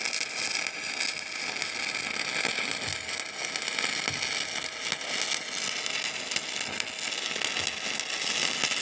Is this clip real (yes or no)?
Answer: yes